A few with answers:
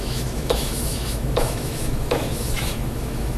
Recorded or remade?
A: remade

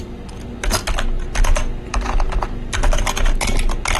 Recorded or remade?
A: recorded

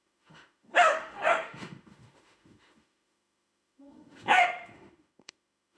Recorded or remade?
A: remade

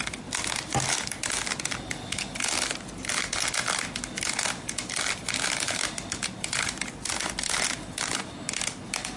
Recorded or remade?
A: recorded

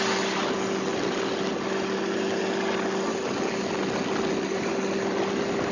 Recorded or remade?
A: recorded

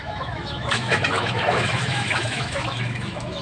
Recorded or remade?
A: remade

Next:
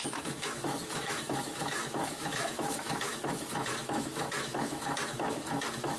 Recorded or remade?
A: remade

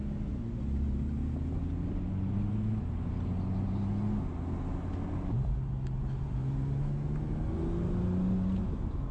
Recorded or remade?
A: recorded